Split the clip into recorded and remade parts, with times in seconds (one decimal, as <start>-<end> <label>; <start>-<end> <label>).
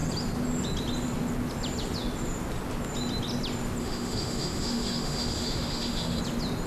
0.0-3.8 recorded; 3.8-6.2 remade; 6.2-6.7 recorded